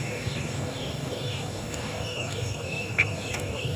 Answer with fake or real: fake